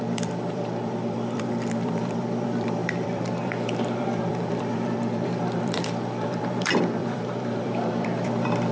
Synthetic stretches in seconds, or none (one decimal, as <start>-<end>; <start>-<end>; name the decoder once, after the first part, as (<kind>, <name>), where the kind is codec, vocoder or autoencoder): 0.0-8.7 (vocoder, BigVGAN v2)